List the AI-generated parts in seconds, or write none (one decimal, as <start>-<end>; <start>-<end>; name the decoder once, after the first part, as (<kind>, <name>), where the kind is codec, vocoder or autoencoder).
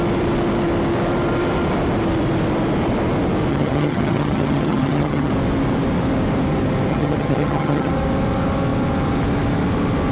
3.5-5.3 (vocoder, HiFi-GAN); 6.9-7.9